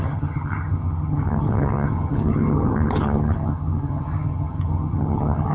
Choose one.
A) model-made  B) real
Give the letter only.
A